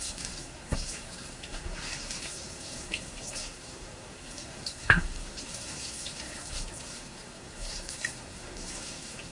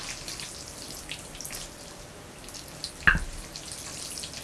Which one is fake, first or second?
first